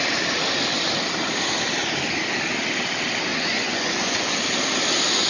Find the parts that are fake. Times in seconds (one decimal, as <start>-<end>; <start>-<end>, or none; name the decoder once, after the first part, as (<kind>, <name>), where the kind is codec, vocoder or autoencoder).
3.3-4.3 (vocoder, Vocos)